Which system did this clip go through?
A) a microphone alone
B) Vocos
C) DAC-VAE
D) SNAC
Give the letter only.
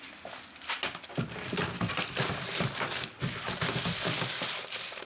A